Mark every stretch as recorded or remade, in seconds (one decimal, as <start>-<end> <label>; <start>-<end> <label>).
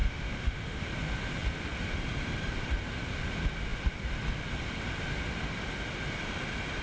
0.0-0.8 remade; 0.8-6.8 recorded